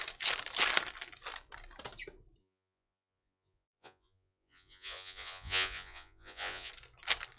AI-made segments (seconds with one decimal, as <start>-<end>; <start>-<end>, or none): 2.4-6.7